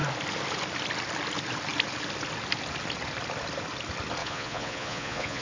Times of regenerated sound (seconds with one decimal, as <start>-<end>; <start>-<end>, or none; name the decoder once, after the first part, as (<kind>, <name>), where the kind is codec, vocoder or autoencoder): 4.2-5.4 (vocoder, Vocos)